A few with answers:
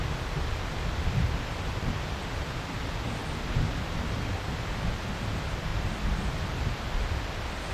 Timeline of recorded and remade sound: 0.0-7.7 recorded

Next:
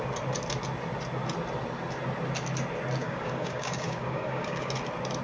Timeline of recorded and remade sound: 0.0-3.0 recorded; 3.0-4.7 remade; 4.7-5.2 recorded

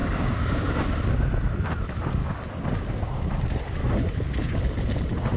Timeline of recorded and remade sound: 0.0-1.0 remade; 1.0-2.2 recorded; 2.2-3.2 remade; 3.2-3.8 recorded; 3.8-4.6 remade; 4.6-5.4 recorded

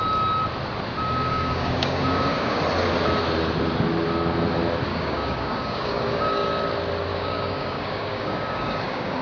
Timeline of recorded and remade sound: 0.0-1.3 recorded; 1.3-2.6 remade; 2.6-4.9 recorded; 4.9-6.5 remade; 6.5-7.1 recorded; 7.1-9.2 remade